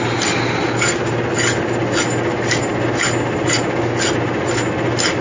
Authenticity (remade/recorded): recorded